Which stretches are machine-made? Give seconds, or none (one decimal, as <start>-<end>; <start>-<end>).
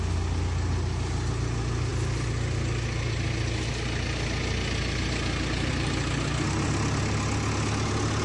none